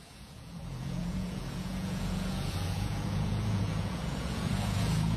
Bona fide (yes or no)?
no